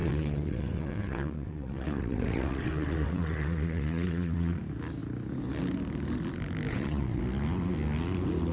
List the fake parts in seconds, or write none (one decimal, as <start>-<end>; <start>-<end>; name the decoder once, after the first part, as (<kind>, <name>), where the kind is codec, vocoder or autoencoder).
0.0-4.6 (vocoder, WaveNeXt); 6.7-7.2